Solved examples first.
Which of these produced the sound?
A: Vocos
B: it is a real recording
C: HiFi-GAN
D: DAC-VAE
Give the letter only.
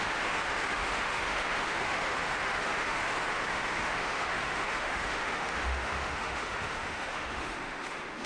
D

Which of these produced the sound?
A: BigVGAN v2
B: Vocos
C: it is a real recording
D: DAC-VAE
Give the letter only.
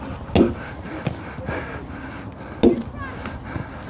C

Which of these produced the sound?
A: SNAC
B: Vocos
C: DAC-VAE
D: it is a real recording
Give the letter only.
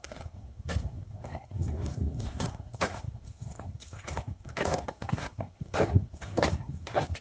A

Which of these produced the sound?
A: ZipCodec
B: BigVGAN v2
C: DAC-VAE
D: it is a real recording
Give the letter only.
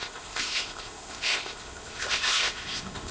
A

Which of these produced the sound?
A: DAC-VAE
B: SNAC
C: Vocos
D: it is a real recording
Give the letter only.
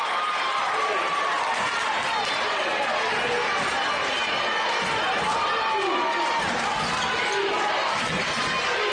D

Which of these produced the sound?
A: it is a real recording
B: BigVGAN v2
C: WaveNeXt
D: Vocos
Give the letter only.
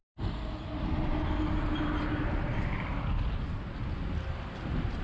A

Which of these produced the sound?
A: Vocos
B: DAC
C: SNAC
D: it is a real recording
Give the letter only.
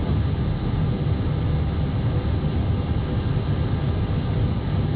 D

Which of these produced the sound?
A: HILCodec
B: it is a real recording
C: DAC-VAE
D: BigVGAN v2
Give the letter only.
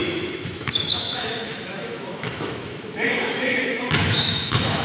C